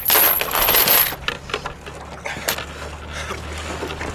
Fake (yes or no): no